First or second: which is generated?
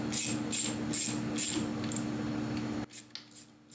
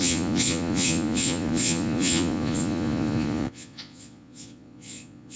second